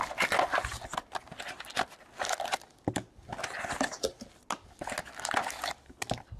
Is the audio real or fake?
real